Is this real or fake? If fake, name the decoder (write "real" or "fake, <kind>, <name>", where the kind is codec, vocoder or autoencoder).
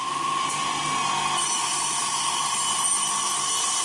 fake, vocoder, BigVGAN v2